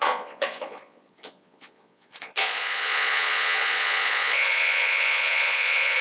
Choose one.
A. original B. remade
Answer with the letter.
B